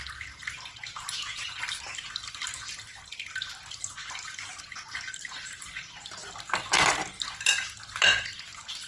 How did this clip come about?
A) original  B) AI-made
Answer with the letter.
A